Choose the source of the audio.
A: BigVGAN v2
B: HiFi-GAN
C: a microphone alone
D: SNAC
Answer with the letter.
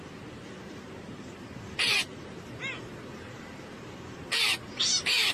A